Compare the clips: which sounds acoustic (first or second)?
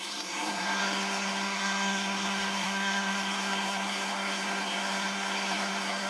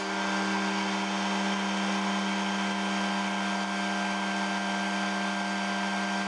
second